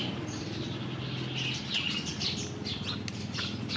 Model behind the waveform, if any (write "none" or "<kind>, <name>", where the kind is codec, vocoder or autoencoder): none